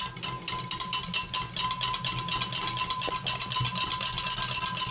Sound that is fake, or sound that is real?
real